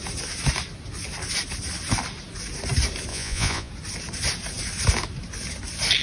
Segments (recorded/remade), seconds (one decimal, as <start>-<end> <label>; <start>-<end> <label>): 0.0-3.1 recorded; 3.1-3.7 remade; 3.7-6.0 recorded